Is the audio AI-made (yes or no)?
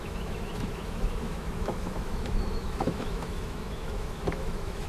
yes